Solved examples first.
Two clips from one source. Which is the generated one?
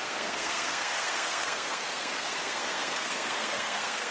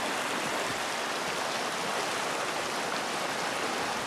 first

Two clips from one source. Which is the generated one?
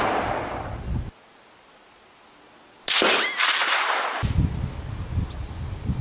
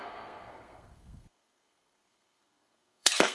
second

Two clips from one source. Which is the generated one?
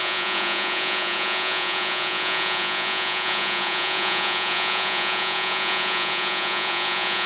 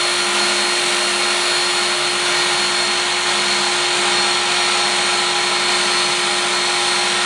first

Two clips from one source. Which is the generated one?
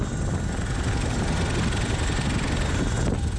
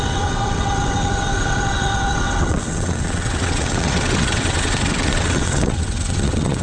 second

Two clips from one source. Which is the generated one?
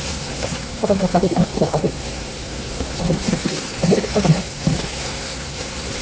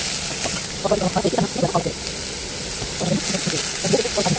first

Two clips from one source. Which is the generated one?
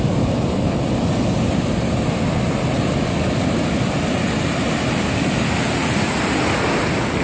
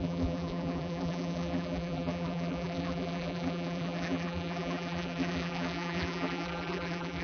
second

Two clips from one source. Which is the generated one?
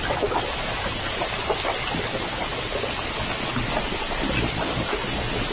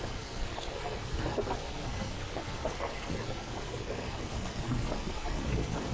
second